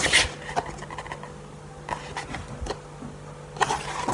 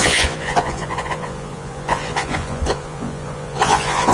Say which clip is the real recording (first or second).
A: first